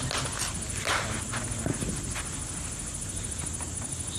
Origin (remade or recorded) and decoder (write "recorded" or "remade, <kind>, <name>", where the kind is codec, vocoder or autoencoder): recorded